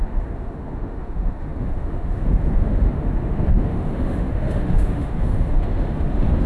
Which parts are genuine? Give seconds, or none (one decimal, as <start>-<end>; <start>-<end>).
none

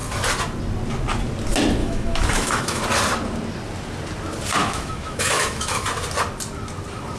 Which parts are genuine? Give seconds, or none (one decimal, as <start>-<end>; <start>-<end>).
0.0-1.8; 2.8-4.6; 5.8-7.2